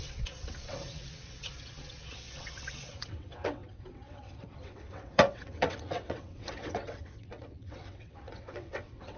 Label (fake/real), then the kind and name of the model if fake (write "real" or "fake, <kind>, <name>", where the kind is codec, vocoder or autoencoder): fake, vocoder, WaveNeXt